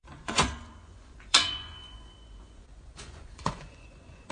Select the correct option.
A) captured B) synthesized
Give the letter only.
B